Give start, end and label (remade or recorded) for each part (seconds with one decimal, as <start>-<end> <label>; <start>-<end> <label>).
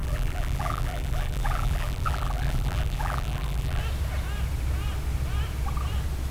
0.0-3.8 remade; 3.8-6.3 recorded